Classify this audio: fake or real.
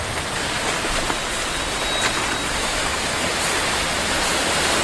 real